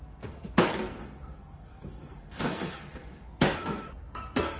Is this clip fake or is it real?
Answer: fake